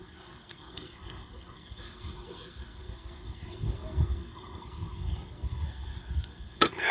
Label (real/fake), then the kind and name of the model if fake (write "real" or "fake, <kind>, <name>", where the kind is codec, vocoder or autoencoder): fake, codec, SNAC